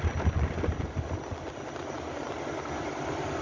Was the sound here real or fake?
real